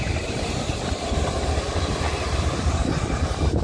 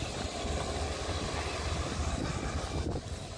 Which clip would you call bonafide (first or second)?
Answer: second